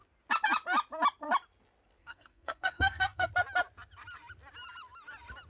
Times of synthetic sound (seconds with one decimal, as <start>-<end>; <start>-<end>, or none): 2.0-3.3